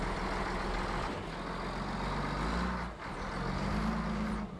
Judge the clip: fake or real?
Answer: real